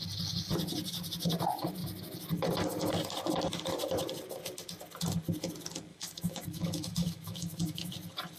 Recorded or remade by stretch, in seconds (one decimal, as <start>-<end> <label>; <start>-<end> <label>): 0.0-5.9 recorded; 5.9-7.9 remade; 7.9-8.4 recorded